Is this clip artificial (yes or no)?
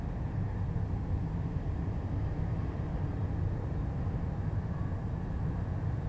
no